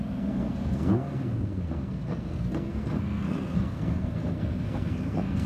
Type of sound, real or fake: fake